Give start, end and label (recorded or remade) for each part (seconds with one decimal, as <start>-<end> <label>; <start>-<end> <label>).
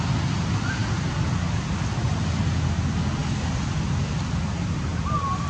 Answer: 0.0-5.5 recorded